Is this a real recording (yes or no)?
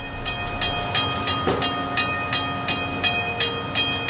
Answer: yes